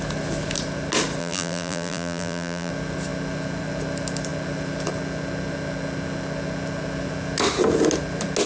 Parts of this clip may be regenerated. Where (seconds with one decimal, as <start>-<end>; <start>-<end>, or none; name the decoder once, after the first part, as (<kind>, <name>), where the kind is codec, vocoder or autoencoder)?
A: 1.2-2.7 (vocoder, BigVGAN v2)